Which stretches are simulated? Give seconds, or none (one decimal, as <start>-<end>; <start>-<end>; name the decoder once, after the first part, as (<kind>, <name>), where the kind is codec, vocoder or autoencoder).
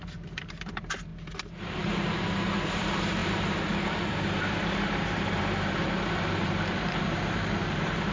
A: 0.0-1.1 (vocoder, BigVGAN v2); 1.6-8.1